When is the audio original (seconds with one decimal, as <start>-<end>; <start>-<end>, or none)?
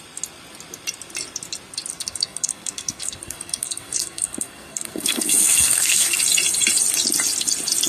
0.0-1.9; 6.2-7.9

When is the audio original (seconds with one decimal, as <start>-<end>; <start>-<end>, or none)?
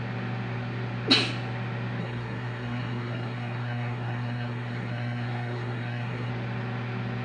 0.0-2.0; 6.3-7.2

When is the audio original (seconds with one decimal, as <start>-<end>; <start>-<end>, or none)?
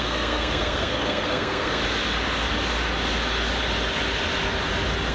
1.8-5.1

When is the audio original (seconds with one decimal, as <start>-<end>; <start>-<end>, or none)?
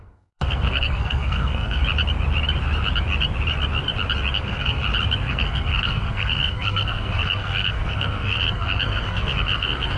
1.8-4.3; 4.8-5.3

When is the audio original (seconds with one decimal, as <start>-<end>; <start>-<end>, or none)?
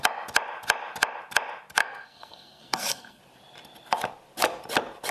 0.0-1.8; 3.2-5.1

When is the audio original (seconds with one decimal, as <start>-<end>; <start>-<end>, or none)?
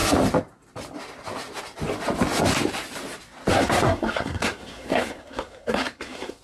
0.0-3.5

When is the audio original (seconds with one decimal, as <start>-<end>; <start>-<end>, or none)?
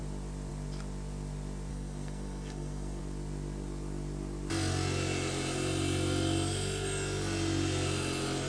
0.0-1.7; 3.0-8.5